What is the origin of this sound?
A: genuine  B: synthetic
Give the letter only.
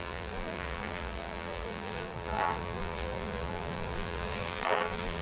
B